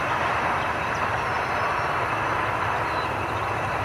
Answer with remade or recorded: remade